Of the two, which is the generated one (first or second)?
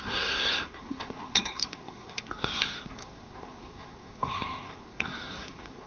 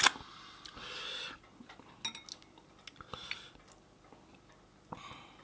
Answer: first